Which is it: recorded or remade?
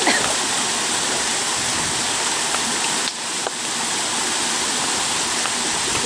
recorded